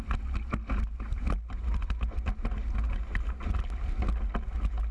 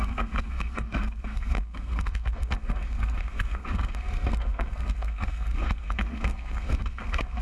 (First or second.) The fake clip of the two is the second